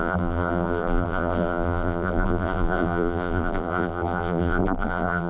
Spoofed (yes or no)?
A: yes